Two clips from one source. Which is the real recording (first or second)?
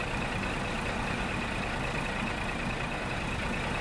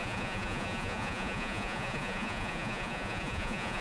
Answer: first